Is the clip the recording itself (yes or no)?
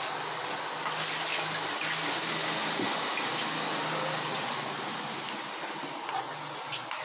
yes